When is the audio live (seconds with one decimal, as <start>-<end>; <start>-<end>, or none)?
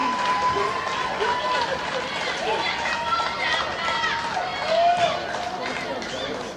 4.5-5.7